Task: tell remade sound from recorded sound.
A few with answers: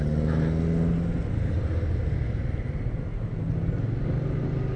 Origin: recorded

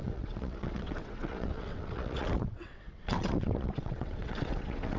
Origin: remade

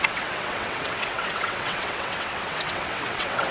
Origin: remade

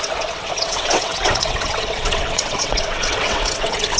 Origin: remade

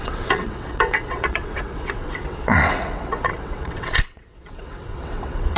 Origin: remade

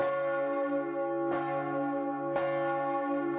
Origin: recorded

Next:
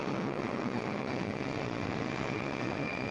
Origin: remade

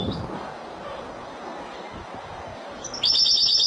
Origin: recorded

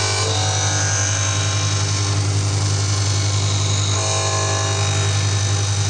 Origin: recorded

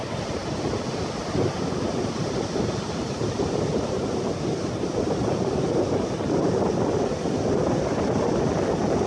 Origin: recorded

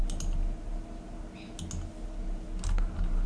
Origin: recorded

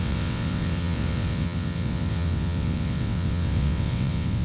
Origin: remade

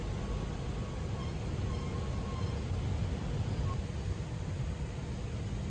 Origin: recorded